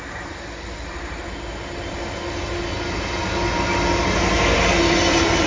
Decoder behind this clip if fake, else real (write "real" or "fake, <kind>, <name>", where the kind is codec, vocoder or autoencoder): real